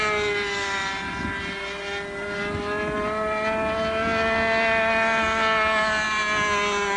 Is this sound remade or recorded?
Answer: recorded